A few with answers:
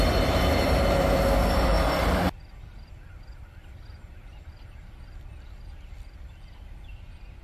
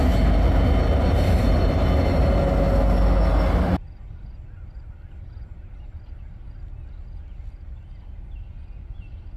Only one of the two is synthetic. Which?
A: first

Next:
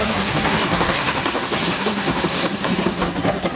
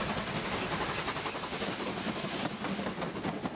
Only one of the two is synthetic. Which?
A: first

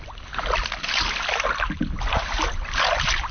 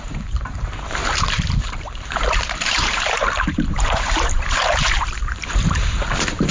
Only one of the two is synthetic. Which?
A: second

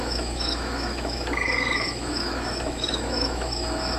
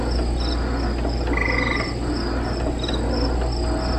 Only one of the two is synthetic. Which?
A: first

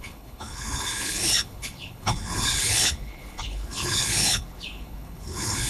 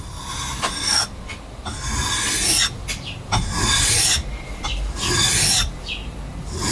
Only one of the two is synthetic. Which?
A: first